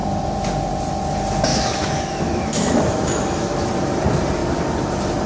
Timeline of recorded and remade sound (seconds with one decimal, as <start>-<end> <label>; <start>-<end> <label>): 0.0-1.5 recorded; 1.5-3.7 remade; 3.7-5.3 recorded